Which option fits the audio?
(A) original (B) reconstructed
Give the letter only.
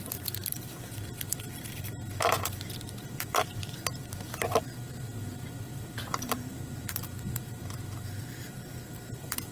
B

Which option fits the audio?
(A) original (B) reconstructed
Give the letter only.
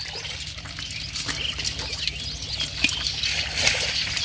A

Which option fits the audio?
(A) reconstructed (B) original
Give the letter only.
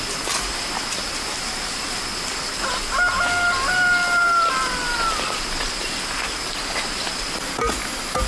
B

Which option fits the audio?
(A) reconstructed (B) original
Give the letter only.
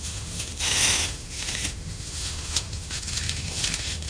A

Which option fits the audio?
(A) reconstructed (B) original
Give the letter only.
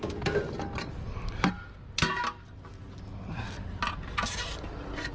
B